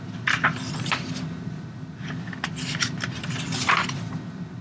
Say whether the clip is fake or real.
real